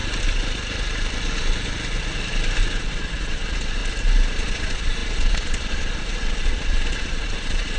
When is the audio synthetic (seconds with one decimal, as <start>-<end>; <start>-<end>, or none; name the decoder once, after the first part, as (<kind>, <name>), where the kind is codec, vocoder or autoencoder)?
2.8-3.8 (vocoder, Vocos); 4.3-7.8